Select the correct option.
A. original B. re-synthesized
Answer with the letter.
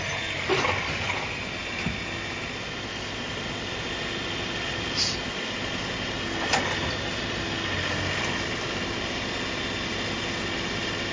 A